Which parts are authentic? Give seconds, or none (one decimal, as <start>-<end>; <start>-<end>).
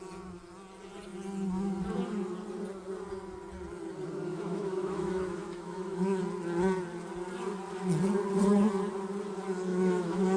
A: 0.0-4.3; 6.2-9.7